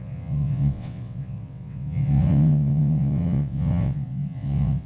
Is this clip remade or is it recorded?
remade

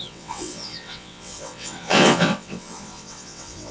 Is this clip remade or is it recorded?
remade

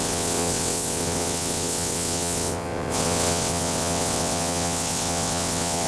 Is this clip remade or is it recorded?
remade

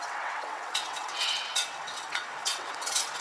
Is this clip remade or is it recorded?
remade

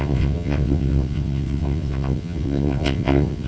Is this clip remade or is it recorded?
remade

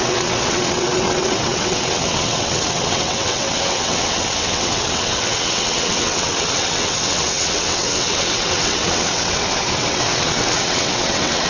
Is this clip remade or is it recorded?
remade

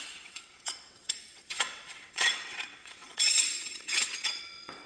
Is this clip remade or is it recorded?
remade